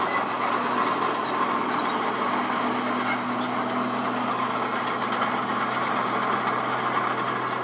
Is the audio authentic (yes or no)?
yes